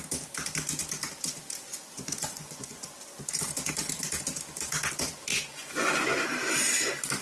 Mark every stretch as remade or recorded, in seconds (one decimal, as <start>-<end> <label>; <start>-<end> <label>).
0.0-1.7 recorded; 1.7-2.8 remade; 2.8-5.3 recorded; 5.3-6.4 remade; 6.4-7.2 recorded